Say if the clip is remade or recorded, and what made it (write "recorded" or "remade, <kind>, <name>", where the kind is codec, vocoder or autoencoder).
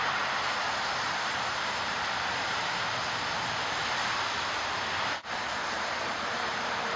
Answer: remade, vocoder, BigVGAN v2